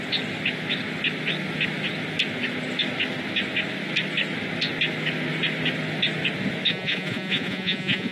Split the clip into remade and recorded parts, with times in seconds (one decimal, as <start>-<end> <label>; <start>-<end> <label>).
0.0-6.7 recorded; 6.7-8.1 remade